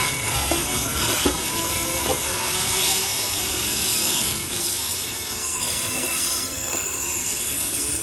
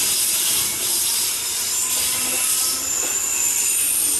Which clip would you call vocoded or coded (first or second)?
first